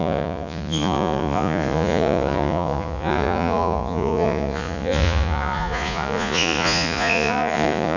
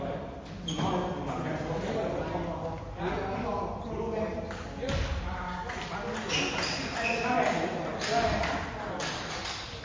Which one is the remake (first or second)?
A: first